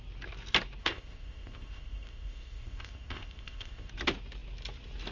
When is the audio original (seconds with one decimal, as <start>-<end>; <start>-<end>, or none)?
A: 0.0-0.8; 3.9-5.1